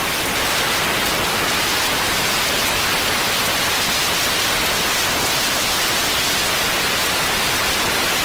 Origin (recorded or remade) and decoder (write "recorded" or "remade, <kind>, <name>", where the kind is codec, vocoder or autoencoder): recorded